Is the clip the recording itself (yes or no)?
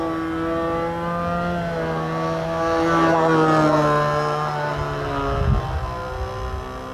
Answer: yes